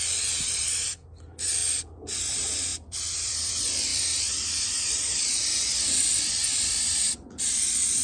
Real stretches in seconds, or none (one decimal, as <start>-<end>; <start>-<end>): 0.0-2.7; 3.5-3.9; 5.1-6.5; 7.3-8.0